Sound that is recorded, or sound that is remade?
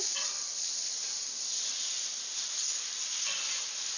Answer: recorded